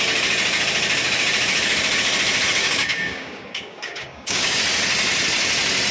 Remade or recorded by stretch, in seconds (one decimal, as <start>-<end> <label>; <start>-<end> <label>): 0.0-2.6 recorded; 2.6-4.6 remade; 4.6-5.9 recorded